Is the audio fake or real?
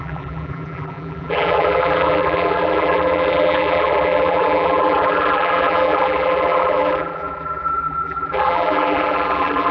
fake